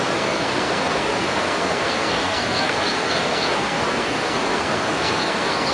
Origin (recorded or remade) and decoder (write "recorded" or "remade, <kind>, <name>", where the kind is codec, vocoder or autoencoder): remade, codec, SNAC